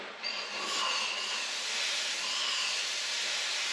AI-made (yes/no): no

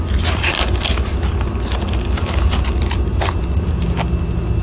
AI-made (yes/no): no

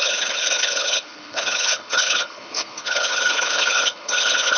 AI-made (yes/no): yes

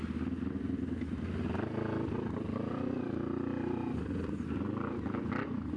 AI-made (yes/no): no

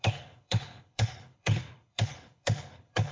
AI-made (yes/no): yes